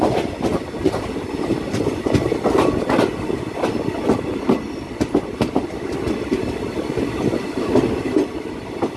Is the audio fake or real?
real